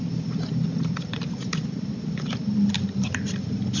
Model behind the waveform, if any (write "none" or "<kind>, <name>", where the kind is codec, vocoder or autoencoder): none